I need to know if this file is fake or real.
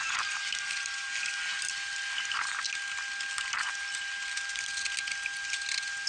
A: real